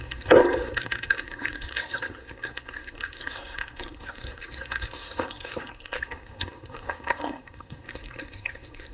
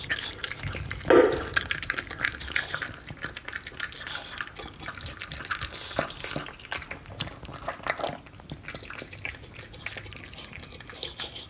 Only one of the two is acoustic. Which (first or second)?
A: second